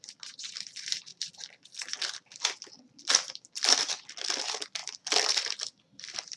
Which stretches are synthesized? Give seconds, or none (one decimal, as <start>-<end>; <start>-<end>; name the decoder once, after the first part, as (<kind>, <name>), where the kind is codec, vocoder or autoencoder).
1.1-3.9 (vocoder, BigVGAN v2); 4.8-5.8